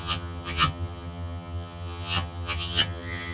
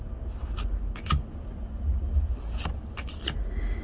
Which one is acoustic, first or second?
second